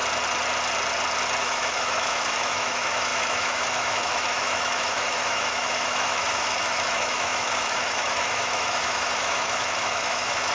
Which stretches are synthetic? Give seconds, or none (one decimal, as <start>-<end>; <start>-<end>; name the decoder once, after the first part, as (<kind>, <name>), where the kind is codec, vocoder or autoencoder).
1.4-10.5 (autoencoder, DAC-VAE)